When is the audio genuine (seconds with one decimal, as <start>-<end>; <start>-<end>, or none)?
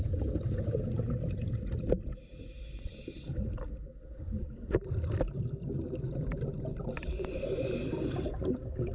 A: 0.0-2.1; 5.4-6.7; 8.3-8.9